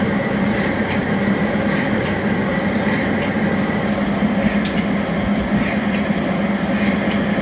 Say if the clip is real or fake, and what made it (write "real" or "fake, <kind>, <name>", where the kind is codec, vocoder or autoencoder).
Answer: real